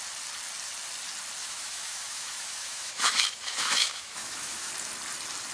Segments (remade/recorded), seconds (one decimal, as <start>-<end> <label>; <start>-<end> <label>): 0.0-1.4 recorded; 1.4-4.7 remade; 4.7-5.5 recorded